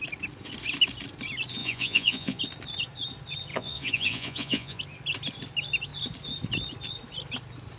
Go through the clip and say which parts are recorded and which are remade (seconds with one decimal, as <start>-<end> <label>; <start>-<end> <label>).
0.0-1.6 recorded; 1.6-2.4 remade; 2.4-3.5 recorded; 3.5-4.8 remade; 4.8-7.8 recorded